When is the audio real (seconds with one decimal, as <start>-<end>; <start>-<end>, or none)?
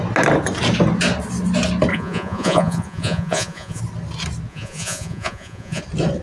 0.0-1.9; 3.8-4.5; 5.8-6.2